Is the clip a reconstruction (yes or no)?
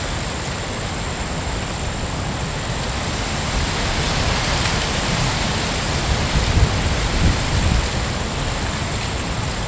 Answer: no